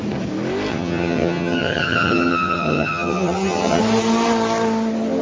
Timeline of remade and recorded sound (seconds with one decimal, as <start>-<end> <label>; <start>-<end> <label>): 0.0-0.7 recorded; 0.7-3.8 remade; 3.8-5.2 recorded